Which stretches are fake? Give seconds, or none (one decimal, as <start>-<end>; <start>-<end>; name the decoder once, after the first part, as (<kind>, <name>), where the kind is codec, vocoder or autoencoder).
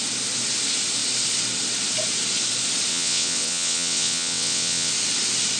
2.9-4.9 (vocoder, WaveNeXt)